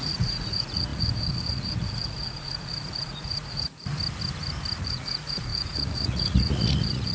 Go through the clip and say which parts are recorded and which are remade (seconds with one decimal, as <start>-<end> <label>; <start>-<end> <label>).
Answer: 0.0-3.9 remade; 3.9-4.8 recorded; 4.8-7.1 remade